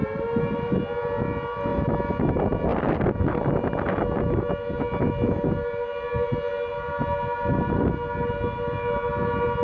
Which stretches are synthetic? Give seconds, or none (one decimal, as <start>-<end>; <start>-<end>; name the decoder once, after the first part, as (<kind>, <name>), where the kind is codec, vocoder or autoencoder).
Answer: none